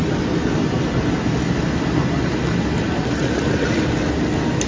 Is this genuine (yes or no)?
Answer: yes